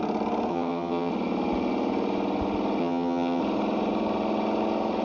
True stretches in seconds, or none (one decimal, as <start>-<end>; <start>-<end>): 0.0-0.5; 1.1-2.8; 3.4-5.0